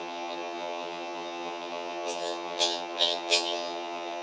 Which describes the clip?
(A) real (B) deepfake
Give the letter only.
B